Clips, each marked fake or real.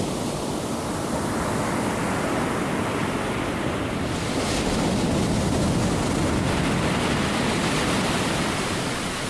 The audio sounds real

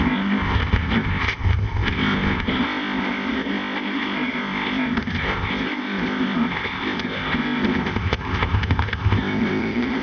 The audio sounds fake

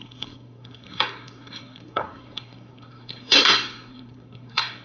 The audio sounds fake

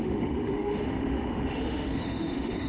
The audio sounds fake